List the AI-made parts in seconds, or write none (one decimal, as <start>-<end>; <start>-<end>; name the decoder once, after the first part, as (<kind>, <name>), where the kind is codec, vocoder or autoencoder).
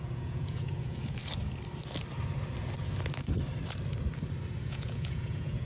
0.0-1.2 (vocoder, Vocos); 4.6-5.7